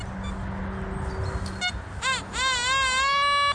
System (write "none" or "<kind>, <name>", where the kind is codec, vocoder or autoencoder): none